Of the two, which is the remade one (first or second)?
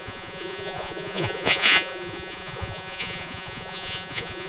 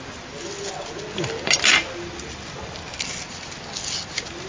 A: first